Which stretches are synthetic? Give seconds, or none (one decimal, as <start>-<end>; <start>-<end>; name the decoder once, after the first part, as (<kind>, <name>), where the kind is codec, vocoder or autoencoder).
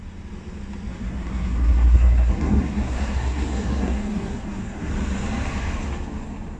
0.9-4.9 (codec, SNAC)